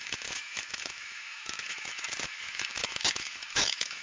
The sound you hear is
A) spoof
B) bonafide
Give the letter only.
A